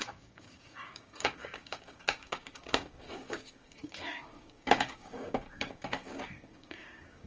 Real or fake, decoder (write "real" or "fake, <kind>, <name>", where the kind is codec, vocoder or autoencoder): fake, codec, DAC